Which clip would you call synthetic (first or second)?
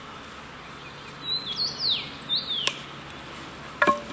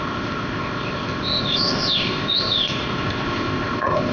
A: second